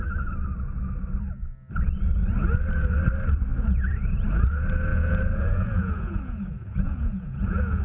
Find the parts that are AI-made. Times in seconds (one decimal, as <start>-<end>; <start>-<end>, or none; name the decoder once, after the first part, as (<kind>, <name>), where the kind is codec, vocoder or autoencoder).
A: 4.9-7.8 (vocoder, Vocos)